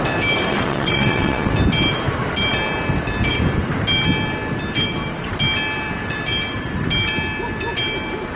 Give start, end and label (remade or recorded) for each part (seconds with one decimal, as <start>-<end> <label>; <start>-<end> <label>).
0.0-0.5 recorded; 0.5-1.5 remade; 1.5-8.4 recorded